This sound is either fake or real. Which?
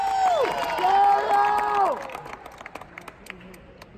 real